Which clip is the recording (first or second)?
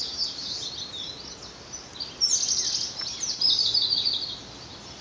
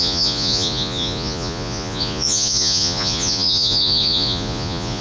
first